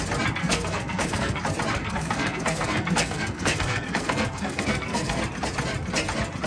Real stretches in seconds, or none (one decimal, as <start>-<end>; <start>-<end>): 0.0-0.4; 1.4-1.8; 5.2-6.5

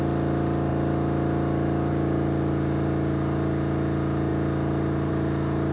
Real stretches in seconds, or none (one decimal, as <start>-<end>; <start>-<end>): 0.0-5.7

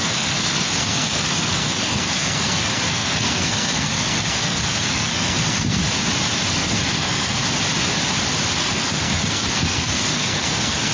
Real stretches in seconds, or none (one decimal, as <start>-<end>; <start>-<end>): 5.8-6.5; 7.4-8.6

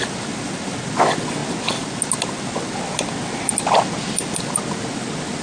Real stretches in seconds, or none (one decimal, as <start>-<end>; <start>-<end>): 0.0-5.4

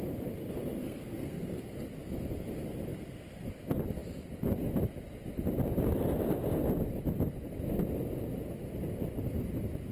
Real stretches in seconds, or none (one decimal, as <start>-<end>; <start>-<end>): 0.0-0.8; 1.7-9.9

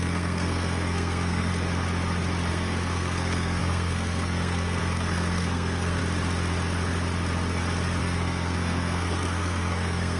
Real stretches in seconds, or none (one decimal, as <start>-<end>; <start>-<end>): 1.5-2.5; 6.0-8.0

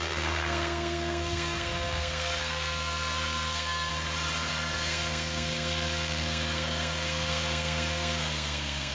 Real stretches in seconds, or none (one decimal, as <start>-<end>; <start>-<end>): 3.9-4.5